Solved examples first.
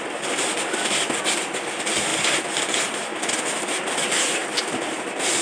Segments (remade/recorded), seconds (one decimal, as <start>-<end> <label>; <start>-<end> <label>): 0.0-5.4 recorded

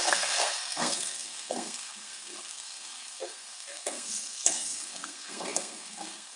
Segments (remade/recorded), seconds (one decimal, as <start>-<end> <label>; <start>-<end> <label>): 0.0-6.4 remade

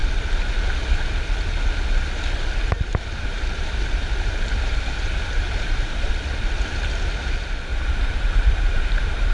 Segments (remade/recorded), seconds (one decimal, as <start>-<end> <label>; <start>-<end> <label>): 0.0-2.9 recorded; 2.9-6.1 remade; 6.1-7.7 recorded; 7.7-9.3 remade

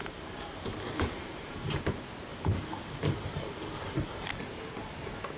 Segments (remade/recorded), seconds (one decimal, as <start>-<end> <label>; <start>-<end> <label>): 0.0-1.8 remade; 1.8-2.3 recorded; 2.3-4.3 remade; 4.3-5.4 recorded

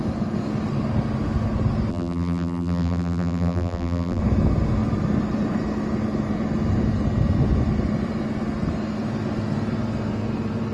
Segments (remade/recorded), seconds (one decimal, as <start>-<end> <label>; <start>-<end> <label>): 0.0-1.9 recorded; 1.9-4.2 remade; 4.2-10.7 recorded

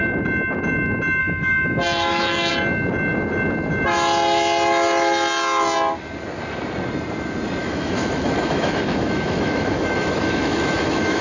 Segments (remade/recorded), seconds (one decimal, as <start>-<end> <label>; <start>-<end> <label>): 0.0-1.2 recorded; 1.2-2.5 remade; 2.5-7.6 recorded; 7.6-11.2 remade

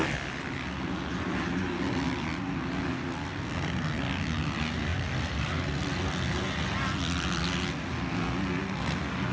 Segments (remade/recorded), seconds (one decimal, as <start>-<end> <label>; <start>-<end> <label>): 0.0-9.3 recorded